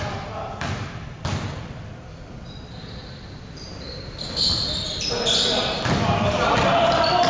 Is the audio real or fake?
fake